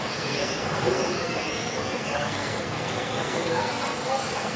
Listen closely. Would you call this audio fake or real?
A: fake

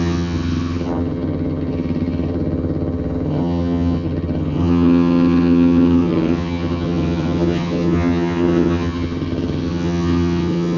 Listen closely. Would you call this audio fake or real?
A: fake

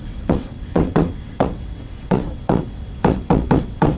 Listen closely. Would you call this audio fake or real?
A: fake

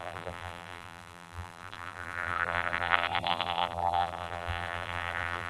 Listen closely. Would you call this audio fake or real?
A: fake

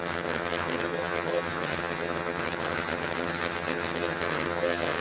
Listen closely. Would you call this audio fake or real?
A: fake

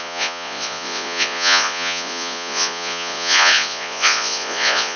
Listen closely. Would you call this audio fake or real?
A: fake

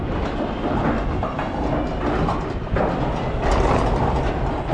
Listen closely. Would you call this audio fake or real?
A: real